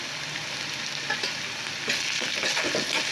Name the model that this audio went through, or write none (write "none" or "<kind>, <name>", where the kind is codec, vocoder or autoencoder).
none